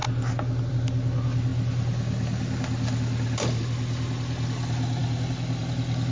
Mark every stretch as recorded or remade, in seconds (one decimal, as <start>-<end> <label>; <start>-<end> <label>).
0.0-6.1 recorded